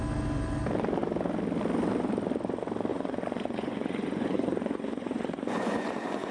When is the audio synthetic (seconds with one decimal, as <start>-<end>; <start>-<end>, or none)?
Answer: 2.9-6.3